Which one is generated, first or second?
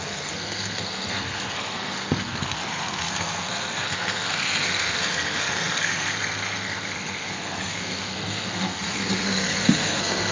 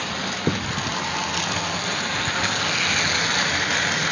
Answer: first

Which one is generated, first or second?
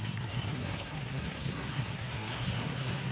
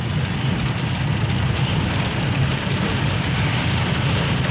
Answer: first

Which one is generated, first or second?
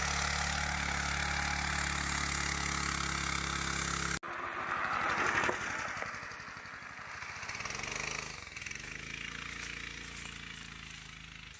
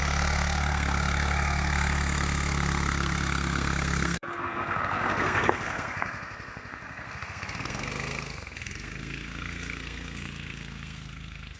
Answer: second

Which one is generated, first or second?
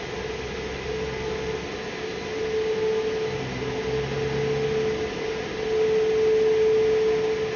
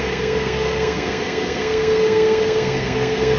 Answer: second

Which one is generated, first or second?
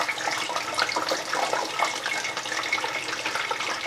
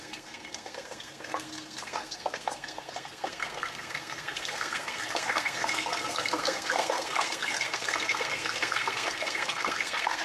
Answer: second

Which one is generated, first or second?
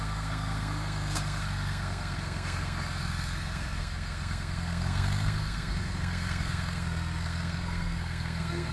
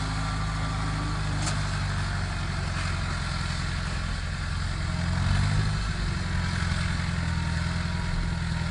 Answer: first